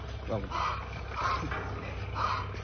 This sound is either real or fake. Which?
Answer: real